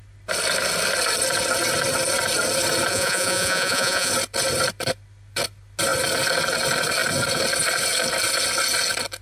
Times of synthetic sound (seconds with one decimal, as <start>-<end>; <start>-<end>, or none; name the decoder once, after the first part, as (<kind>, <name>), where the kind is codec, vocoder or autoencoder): 2.9-4.1 (vocoder, Vocos)